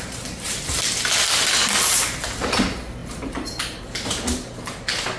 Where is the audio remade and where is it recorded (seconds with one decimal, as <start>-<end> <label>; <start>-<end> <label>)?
0.0-5.2 recorded